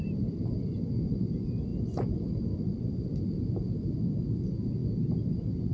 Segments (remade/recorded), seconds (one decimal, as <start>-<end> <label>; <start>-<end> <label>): 0.0-5.7 recorded